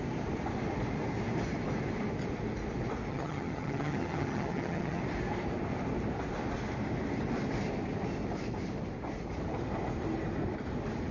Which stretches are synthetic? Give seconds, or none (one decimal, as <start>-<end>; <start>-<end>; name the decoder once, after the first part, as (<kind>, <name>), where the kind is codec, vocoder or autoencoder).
3.1-5.0 (vocoder, HiFi-GAN)